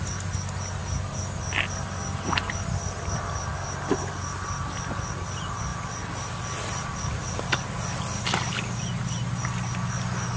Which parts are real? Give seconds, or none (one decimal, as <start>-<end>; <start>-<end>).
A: 0.0-10.4